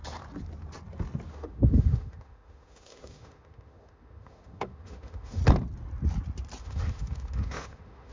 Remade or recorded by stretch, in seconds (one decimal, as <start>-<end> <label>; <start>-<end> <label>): 0.0-1.3 recorded; 1.3-5.4 remade; 5.4-6.6 recorded; 6.6-8.1 remade